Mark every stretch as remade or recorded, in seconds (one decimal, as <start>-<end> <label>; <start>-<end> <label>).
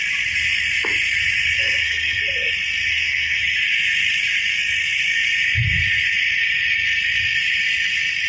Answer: 0.0-1.6 recorded; 1.6-2.2 remade; 2.2-2.9 recorded; 2.9-3.4 remade; 3.4-8.3 recorded